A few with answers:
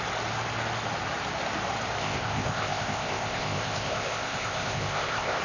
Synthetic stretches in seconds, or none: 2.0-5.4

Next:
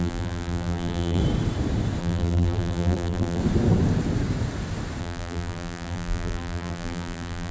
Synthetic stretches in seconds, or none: 0.0-1.2; 2.0-3.4; 5.0-7.5

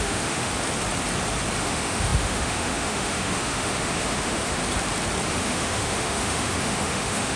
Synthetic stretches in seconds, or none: 0.0-0.5; 1.6-4.6; 5.3-7.4

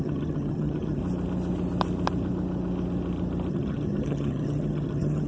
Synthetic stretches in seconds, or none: 0.0-1.0; 3.5-5.3